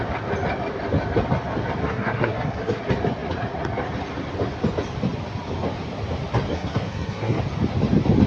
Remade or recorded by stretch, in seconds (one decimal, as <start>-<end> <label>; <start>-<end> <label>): 0.0-1.8 recorded; 1.8-2.8 remade; 2.8-6.5 recorded; 6.5-7.4 remade; 7.4-8.3 recorded